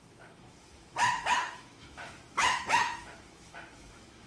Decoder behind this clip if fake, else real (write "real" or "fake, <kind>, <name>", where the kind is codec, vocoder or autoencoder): fake, autoencoder, DAC-VAE